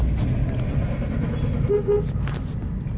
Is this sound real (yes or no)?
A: yes